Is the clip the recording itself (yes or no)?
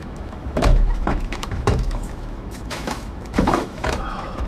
no